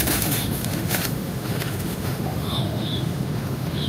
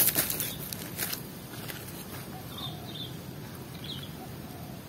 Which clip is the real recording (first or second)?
second